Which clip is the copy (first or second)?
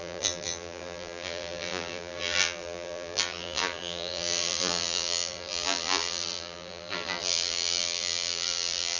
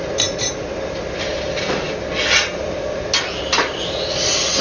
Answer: first